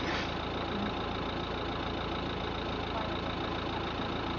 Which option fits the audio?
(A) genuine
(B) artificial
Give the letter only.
A